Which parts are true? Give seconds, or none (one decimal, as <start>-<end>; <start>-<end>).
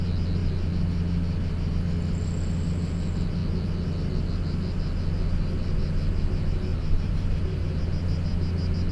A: 0.0-6.7; 7.8-8.9